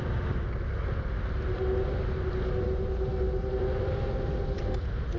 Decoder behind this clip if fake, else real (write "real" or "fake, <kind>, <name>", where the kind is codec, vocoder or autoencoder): real